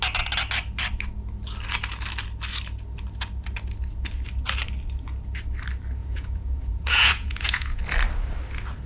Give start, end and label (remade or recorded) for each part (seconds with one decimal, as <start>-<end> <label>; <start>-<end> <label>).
0.0-6.0 recorded; 6.0-7.8 remade; 7.8-8.9 recorded